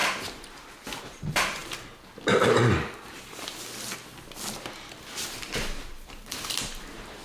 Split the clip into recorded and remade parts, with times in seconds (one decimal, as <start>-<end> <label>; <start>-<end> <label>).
0.0-1.0 recorded; 1.0-1.6 remade; 1.6-5.9 recorded; 5.9-7.2 remade